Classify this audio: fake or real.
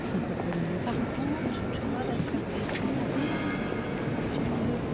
real